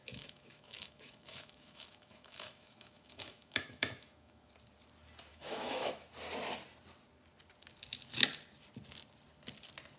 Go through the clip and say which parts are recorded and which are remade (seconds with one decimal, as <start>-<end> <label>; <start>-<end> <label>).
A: 0.0-4.5 remade; 4.5-5.3 recorded; 5.3-6.1 remade; 6.1-10.0 recorded